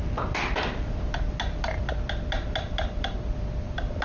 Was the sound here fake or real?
real